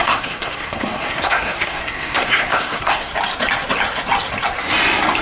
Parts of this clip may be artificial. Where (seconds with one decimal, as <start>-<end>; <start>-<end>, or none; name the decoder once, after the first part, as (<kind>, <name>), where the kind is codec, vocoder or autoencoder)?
0.0-3.1 (codec, SNAC)